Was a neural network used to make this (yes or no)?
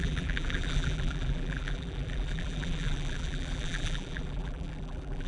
yes